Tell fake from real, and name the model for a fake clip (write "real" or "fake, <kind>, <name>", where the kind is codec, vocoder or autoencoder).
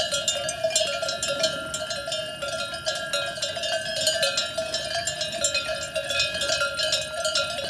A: real